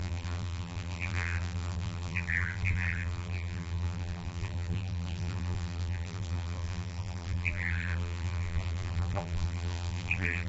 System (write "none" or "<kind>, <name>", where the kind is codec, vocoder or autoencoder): vocoder, BigVGAN v2